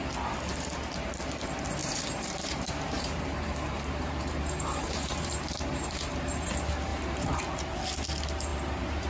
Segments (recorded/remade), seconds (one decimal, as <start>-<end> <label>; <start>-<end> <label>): 0.0-1.8 recorded; 1.8-6.5 remade; 6.5-6.9 recorded; 6.9-7.4 remade; 7.4-8.5 recorded; 8.5-9.1 remade